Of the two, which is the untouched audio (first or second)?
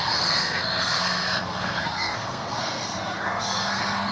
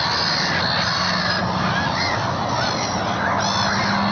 second